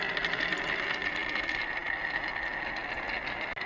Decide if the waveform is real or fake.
real